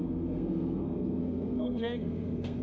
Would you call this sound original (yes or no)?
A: no